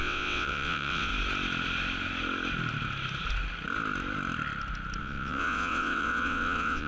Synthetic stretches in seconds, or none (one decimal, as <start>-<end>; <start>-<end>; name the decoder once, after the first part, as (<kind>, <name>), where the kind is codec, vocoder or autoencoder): 0.0-1.1 (vocoder, WaveNeXt); 5.0-6.9